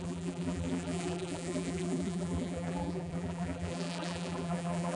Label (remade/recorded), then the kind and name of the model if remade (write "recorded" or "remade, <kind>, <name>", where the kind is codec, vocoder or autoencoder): remade, vocoder, BigVGAN v2